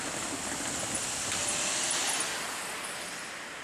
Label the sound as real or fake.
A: real